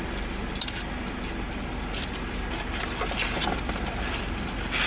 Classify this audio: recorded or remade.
recorded